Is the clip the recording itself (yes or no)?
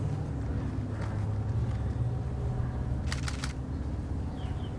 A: yes